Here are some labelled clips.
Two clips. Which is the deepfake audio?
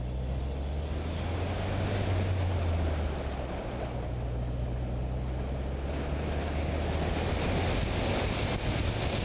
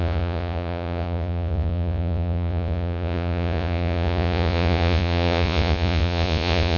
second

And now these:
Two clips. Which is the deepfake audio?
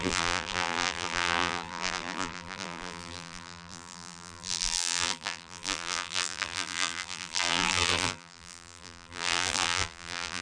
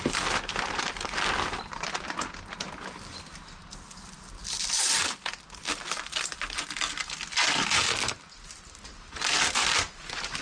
first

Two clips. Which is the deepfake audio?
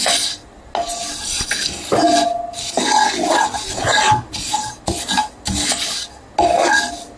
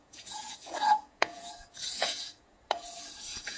second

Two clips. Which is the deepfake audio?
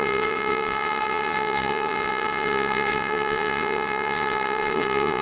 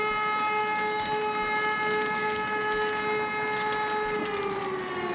first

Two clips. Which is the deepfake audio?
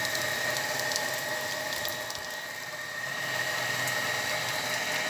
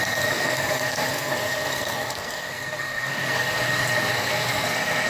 second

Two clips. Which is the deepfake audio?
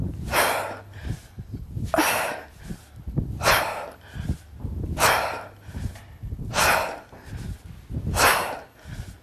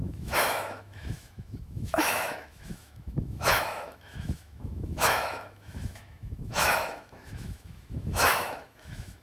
second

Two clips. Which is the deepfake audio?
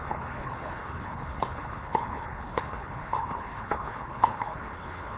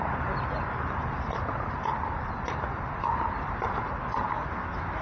first